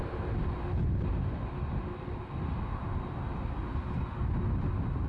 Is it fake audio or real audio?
real